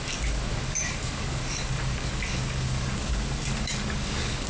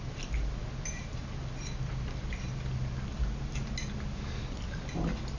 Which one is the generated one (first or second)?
first